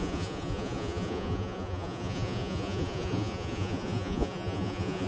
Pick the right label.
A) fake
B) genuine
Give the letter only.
A